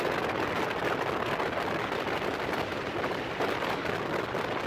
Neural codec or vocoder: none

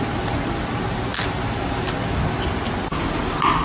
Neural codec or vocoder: none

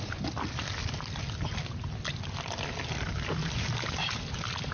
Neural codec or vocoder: none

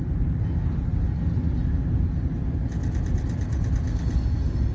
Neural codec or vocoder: none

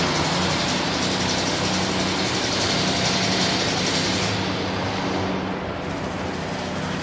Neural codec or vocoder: none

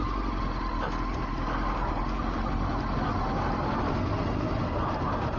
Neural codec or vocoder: none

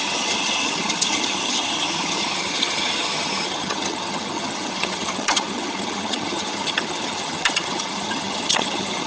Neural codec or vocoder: vocoder, HiFi-GAN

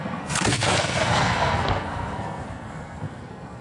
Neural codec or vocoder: codec, SNAC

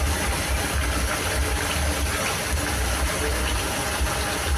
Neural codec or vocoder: none